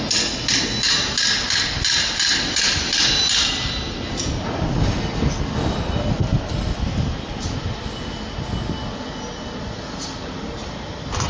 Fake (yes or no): no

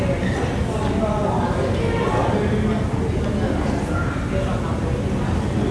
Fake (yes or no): no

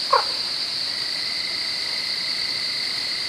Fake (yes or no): yes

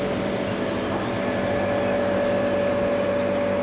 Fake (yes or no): no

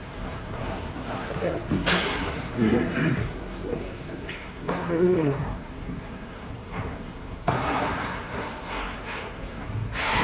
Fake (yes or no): yes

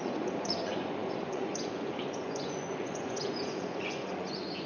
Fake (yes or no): yes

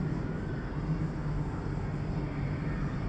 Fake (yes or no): no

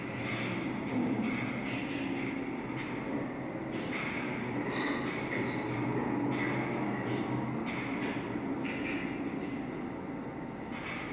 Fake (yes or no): no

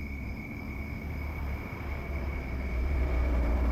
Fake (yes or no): yes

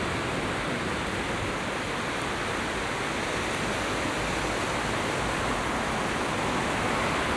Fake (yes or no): no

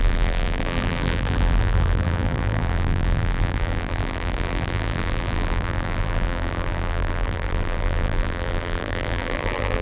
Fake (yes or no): yes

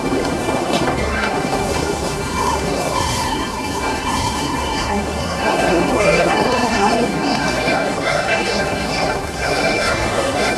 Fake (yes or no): yes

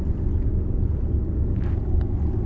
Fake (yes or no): no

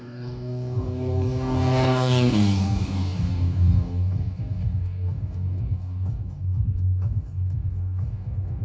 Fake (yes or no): yes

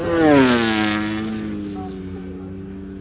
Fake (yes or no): no